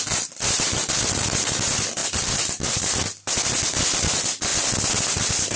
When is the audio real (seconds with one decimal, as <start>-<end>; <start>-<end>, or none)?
0.0-2.0; 2.8-5.6